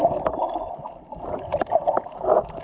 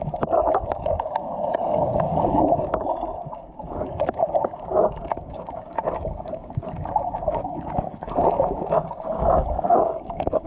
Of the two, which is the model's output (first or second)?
second